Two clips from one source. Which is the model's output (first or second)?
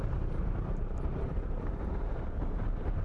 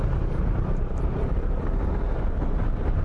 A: first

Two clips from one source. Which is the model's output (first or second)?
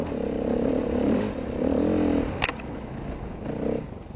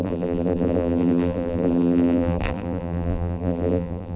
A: second